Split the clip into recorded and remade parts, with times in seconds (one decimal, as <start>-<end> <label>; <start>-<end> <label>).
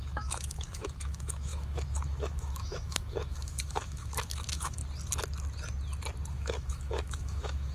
0.0-4.8 remade; 4.8-6.3 recorded; 6.3-7.7 remade